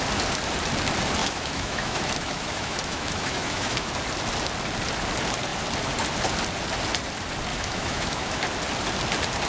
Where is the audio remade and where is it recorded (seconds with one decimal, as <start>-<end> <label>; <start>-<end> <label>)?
0.0-1.2 recorded; 1.2-3.9 remade; 3.9-7.5 recorded; 7.5-8.4 remade; 8.4-9.5 recorded